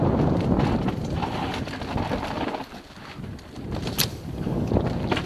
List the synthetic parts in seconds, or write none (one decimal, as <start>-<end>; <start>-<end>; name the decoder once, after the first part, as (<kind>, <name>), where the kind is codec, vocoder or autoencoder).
4.1-4.7 (codec, DAC)